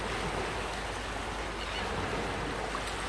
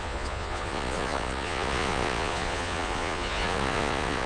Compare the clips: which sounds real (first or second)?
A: first